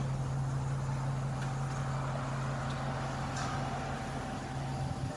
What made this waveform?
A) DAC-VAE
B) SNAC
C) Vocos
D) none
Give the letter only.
D